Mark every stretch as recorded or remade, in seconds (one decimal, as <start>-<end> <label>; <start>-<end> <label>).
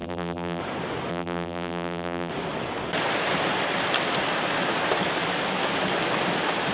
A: 0.0-0.6 remade; 0.6-1.1 recorded; 1.1-2.3 remade; 2.3-6.7 recorded